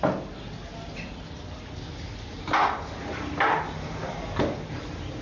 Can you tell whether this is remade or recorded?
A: recorded